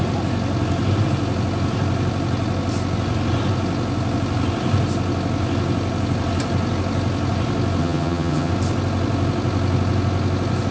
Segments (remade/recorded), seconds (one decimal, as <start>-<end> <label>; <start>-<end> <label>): 0.0-7.8 recorded; 7.8-8.5 remade; 8.5-10.7 recorded